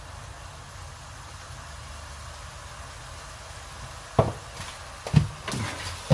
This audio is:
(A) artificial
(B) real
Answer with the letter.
B